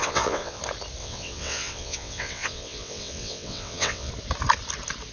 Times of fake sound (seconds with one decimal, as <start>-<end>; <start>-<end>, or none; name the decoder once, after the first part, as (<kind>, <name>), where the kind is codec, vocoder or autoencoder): 0.0-0.6 (vocoder, WaveNeXt); 1.0-4.1